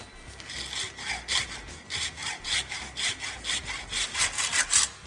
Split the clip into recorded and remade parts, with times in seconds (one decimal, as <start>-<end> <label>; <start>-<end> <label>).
0.0-5.1 recorded